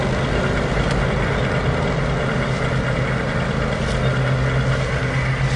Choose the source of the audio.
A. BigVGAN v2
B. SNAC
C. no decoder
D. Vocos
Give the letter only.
C